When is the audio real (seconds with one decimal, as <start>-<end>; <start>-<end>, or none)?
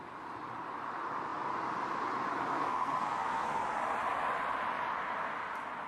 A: 0.0-2.5; 3.6-5.9